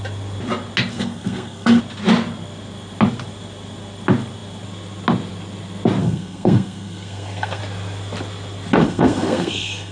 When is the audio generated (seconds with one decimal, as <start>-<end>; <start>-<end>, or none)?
0.9-1.8; 6.0-7.6; 8.8-9.9